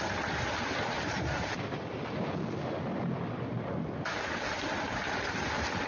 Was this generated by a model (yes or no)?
yes